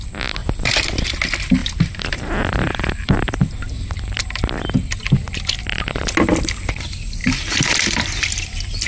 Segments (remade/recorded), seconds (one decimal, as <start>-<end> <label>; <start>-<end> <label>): 0.0-0.4 recorded; 0.4-0.9 remade; 0.9-1.6 recorded; 1.6-4.0 remade; 4.0-7.2 recorded; 7.2-8.2 remade; 8.2-8.9 recorded

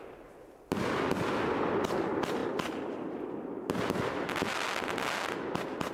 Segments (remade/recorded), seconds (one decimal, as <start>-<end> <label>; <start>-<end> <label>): 0.0-5.9 recorded

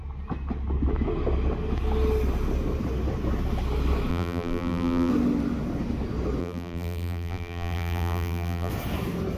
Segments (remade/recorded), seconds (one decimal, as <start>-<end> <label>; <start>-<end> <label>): 0.0-4.1 recorded; 4.1-5.1 remade; 5.1-6.4 recorded; 6.4-8.7 remade; 8.7-9.4 recorded